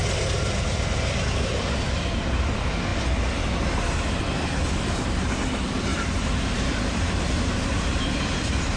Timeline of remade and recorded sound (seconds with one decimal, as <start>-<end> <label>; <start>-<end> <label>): 0.0-5.9 recorded; 5.9-7.4 remade; 7.4-8.8 recorded